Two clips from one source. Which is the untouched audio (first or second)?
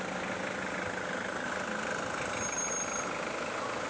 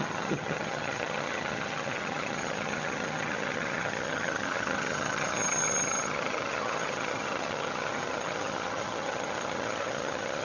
first